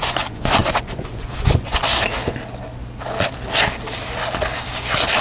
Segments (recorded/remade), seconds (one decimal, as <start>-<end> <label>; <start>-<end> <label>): 0.0-1.8 remade; 1.8-5.2 recorded